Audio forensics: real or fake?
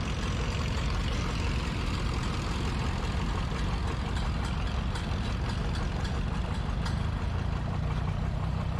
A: real